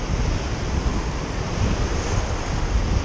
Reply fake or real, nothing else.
real